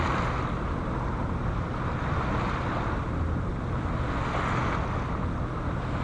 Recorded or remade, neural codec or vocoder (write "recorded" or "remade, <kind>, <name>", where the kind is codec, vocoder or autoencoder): recorded